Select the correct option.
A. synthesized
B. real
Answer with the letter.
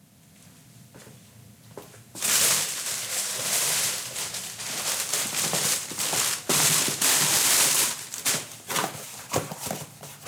A